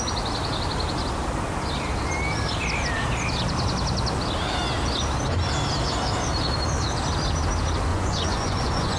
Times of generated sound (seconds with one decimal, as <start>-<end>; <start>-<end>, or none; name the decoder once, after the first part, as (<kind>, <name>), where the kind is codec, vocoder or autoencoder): 7.9-9.0 (vocoder, Vocos)